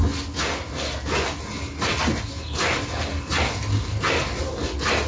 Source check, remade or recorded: recorded